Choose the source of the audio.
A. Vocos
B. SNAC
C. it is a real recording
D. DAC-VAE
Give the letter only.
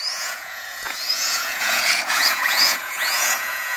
A